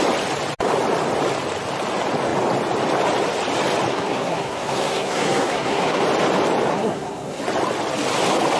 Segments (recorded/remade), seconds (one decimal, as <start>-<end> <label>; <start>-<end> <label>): 0.0-3.9 recorded; 3.9-6.0 remade; 6.0-6.7 recorded; 6.7-7.4 remade; 7.4-8.6 recorded